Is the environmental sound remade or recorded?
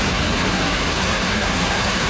remade